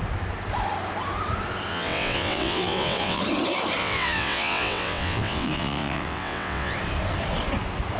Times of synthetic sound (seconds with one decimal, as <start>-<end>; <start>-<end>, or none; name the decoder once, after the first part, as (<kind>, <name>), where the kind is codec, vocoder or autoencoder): 1.7-3.2 (vocoder, WaveNeXt); 3.8-6.7